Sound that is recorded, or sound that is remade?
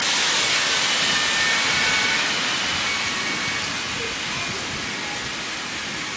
recorded